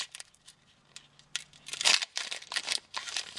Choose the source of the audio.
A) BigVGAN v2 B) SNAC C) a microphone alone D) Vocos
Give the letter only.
C